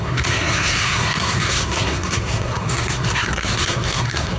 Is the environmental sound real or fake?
fake